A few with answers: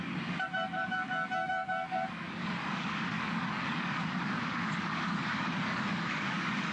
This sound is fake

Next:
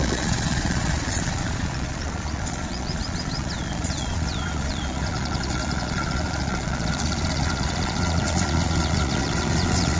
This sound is fake